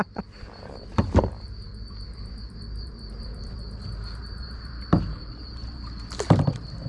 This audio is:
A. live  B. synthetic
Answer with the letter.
B